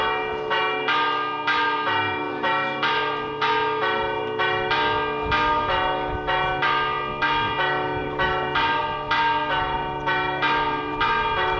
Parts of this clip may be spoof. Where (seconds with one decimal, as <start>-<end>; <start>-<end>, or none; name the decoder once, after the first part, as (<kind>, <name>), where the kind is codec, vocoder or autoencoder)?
none